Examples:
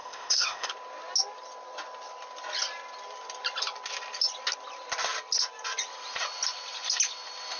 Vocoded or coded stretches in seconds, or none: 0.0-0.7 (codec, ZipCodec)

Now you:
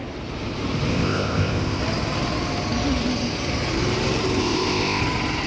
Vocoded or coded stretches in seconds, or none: 0.9-1.8 (codec, ZipCodec); 4.4-5.0

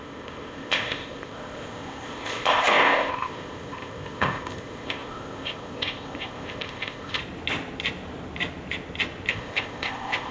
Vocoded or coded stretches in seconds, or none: 0.0-7.2 (codec, ZipCodec); 9.3-10.3